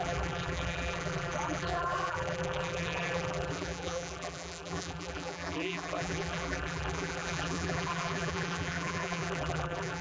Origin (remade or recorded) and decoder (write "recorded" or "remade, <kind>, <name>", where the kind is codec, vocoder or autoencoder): remade, vocoder, BigVGAN v2